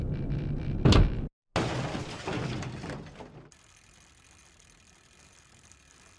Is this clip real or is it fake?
real